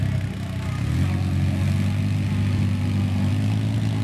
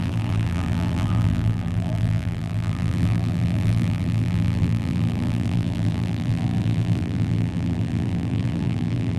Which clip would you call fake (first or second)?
second